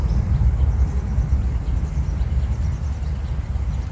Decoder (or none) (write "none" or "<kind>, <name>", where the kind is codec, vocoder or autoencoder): none